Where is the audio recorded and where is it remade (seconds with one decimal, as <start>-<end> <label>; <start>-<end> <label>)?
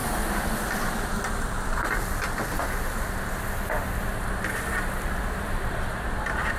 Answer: 0.0-6.6 remade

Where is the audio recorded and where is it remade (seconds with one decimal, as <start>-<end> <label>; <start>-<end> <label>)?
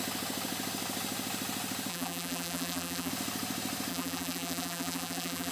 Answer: 0.0-1.9 recorded; 1.9-3.1 remade; 3.1-3.9 recorded; 3.9-5.5 remade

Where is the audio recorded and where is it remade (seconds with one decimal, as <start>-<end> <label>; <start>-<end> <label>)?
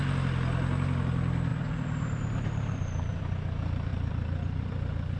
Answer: 0.0-1.5 recorded; 1.5-3.2 remade; 3.2-3.9 recorded; 3.9-4.7 remade; 4.7-5.2 recorded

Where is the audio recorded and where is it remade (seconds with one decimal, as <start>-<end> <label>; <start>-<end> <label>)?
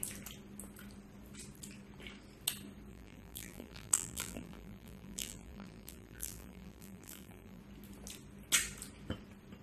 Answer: 0.0-2.9 recorded; 2.9-7.6 remade; 7.6-9.6 recorded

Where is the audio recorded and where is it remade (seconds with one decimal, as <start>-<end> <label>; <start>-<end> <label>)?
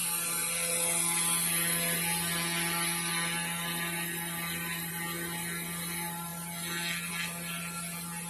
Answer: 0.0-8.3 recorded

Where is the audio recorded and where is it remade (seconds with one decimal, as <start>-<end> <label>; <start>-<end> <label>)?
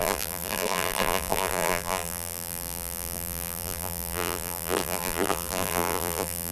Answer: 0.0-6.5 remade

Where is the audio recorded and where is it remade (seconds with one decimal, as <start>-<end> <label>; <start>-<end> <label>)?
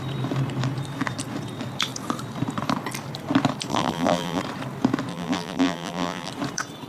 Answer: 0.0-3.7 recorded; 3.7-4.4 remade; 4.4-5.1 recorded; 5.1-6.3 remade; 6.3-6.9 recorded